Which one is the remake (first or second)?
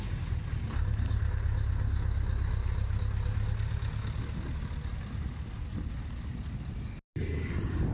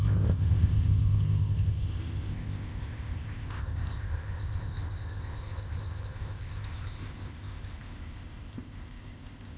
second